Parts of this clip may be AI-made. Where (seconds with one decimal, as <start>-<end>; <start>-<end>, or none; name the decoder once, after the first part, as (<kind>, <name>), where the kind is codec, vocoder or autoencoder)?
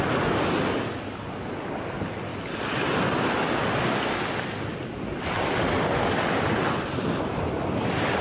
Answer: none